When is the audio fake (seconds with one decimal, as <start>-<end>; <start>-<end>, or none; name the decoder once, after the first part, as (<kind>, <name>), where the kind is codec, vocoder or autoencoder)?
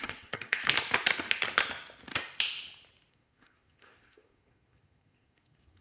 0.0-0.6 (codec, SNAC); 3.1-5.8